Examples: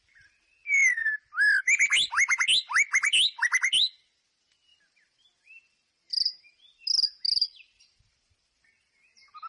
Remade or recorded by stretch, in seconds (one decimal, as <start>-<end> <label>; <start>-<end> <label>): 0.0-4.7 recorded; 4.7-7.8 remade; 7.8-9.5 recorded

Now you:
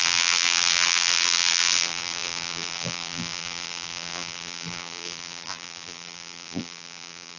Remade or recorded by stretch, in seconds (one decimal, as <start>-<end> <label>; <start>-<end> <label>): 0.0-7.4 remade

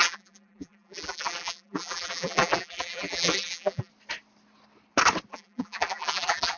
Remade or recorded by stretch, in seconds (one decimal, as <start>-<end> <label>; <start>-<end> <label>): 0.0-3.9 remade; 3.9-5.3 recorded; 5.3-6.6 remade